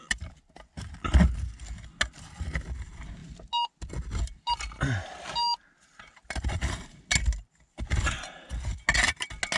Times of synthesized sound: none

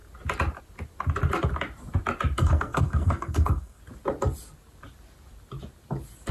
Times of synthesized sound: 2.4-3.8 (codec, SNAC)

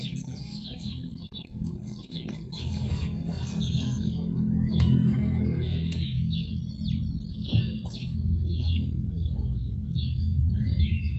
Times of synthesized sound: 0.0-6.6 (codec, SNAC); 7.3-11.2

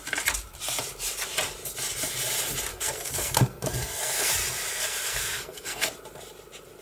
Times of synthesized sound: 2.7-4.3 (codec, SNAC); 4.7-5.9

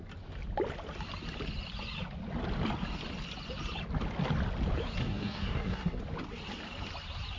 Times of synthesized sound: 5.0-6.0 (codec, SNAC)

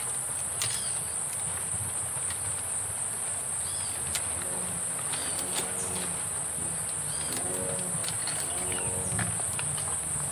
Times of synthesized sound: none